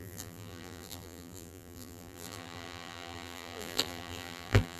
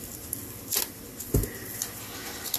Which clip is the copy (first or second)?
first